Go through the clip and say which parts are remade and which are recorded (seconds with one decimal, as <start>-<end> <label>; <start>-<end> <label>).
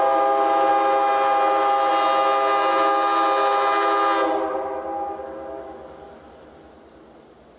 0.0-7.6 recorded